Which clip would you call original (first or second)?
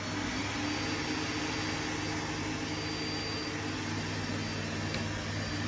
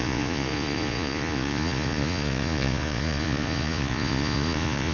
first